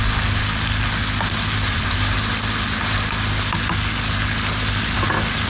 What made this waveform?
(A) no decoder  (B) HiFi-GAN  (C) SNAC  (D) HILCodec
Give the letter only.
A